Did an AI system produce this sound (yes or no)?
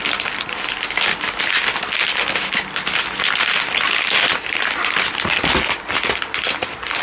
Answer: no